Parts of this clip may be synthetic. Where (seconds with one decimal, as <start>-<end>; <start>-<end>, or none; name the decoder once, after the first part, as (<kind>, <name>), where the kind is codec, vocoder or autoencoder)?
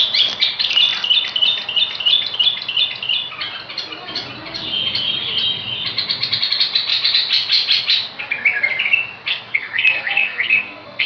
9.3-11.1 (codec, SNAC)